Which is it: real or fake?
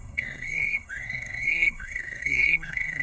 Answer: fake